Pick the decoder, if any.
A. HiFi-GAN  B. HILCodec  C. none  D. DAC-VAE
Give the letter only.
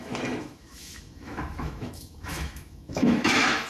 D